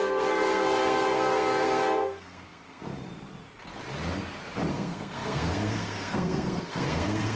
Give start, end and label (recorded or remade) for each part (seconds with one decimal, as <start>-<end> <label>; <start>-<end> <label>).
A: 0.0-2.9 remade; 2.9-4.7 recorded; 4.7-7.4 remade